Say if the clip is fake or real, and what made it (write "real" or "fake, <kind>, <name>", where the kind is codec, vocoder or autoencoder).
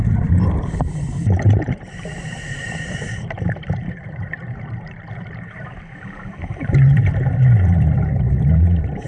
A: fake, vocoder, BigVGAN v2